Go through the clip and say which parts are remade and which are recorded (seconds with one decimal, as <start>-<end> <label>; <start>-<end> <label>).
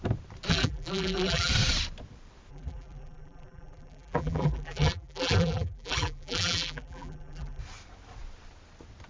0.0-0.5 recorded; 0.5-1.5 remade; 1.5-2.5 recorded; 2.5-7.6 remade; 7.6-9.1 recorded